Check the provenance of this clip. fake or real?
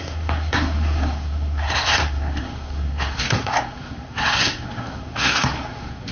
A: fake